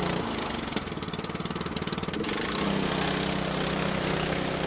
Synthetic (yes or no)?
no